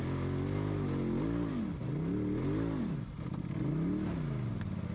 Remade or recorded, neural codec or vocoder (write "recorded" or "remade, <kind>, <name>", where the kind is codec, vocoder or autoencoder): recorded